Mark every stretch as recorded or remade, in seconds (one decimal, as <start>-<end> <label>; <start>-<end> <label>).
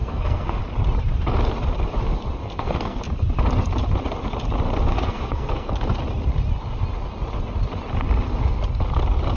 0.0-0.6 remade; 0.6-2.4 recorded; 2.4-3.0 remade; 3.0-4.9 recorded; 4.9-5.7 remade; 5.7-9.4 recorded